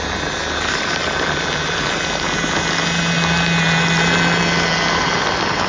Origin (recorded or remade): recorded